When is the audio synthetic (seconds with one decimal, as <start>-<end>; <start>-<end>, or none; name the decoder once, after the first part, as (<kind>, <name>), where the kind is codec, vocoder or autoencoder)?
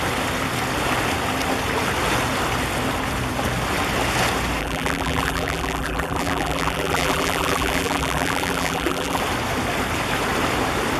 4.6-9.2 (vocoder, BigVGAN v2)